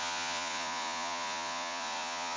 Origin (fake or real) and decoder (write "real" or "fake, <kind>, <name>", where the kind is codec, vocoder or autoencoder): fake, vocoder, Vocos